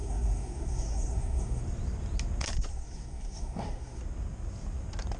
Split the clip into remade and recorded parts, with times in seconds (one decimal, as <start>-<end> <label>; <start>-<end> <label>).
0.0-1.6 remade; 1.6-2.7 recorded; 2.7-4.0 remade; 4.0-5.2 recorded